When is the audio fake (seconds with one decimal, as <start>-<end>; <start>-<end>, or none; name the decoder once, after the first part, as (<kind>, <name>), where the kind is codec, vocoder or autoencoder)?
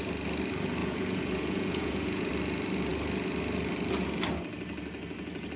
0.8-2.3 (vocoder, Vocos)